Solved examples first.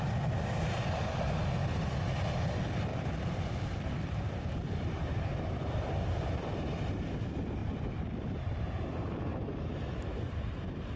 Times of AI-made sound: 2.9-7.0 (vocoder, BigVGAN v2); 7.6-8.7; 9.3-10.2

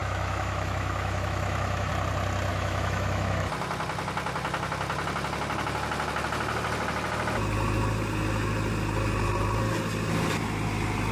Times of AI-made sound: 0.0-1.9 (autoencoder, DAC-VAE); 2.5-3.5

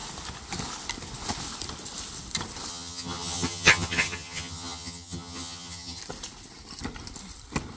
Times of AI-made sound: 2.7-6.0 (vocoder, HiFi-GAN)

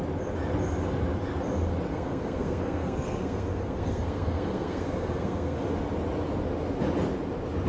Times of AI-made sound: 1.9-5.6 (codec, SNAC)